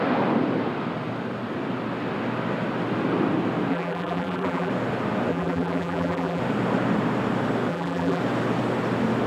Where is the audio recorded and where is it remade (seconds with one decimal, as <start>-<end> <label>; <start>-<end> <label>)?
0.0-3.7 recorded; 3.7-4.7 remade; 4.7-5.3 recorded; 5.3-6.4 remade; 6.4-7.7 recorded; 7.7-8.2 remade; 8.2-9.3 recorded